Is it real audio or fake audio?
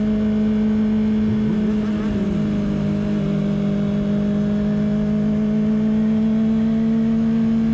real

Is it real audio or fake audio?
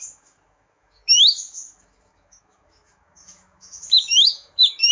fake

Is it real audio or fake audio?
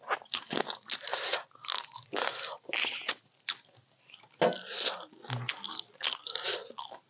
real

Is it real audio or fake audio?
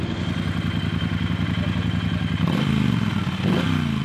real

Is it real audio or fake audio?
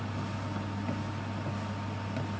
real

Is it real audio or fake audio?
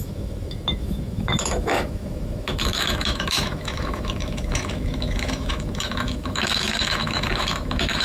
fake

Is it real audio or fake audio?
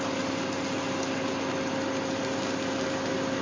real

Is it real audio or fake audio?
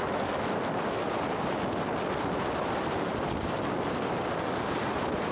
real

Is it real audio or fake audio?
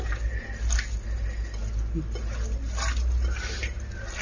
real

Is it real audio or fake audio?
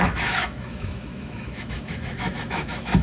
fake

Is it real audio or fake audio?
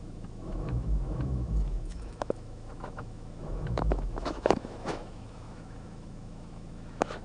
fake